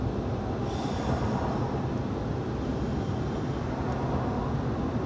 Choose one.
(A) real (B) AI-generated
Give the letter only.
A